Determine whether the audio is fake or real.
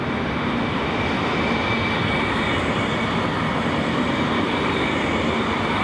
real